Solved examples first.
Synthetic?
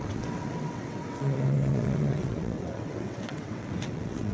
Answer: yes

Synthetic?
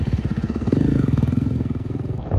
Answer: yes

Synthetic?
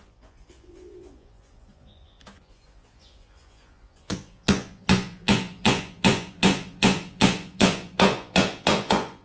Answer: yes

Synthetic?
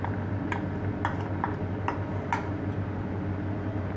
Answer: no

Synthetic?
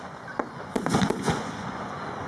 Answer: yes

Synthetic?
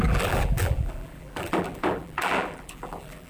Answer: yes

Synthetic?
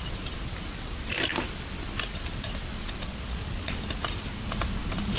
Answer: no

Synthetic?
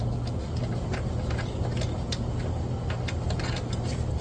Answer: no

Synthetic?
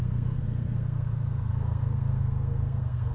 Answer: yes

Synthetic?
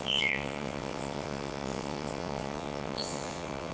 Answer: yes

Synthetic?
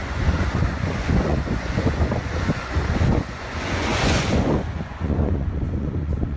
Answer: yes